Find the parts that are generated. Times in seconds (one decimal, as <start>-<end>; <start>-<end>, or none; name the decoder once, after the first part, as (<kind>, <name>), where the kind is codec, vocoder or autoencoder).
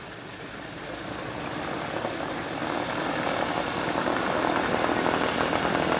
none